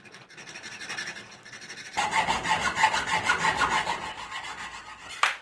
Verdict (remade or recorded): recorded